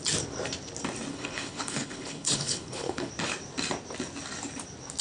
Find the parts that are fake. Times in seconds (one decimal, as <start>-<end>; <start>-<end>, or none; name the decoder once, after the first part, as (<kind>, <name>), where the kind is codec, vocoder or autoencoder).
1.1-3.1 (codec, HILCodec)